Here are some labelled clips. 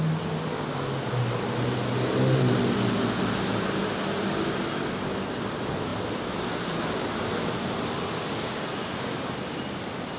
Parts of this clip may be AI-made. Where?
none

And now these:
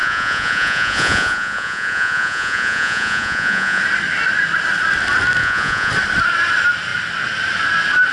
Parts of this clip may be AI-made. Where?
0.0-3.8 (vocoder, Vocos); 5.4-5.9

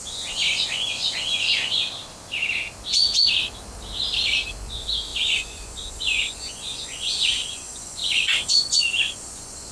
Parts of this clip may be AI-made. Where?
0.0-1.8 (vocoder, Vocos); 4.6-9.7

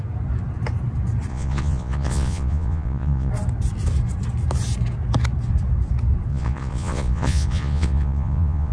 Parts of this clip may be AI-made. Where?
1.3-3.3 (vocoder, Vocos); 6.3-8.7